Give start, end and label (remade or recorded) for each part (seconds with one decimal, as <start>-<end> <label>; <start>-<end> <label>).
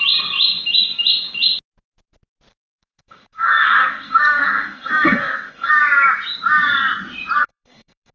0.0-2.5 recorded; 2.5-5.7 remade; 5.7-7.4 recorded; 7.4-8.1 remade